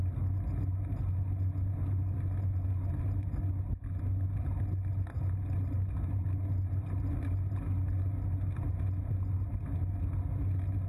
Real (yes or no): yes